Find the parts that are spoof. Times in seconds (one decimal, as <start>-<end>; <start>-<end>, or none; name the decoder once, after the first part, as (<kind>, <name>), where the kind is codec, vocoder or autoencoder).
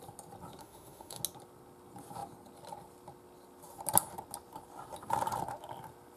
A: 0.6-1.2 (autoencoder, DAC-VAE)